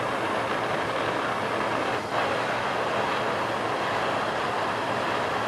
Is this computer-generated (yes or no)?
no